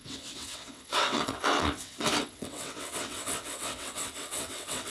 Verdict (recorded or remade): remade